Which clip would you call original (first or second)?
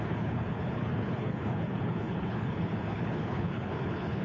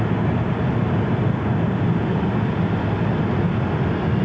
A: second